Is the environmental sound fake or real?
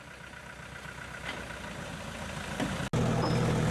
real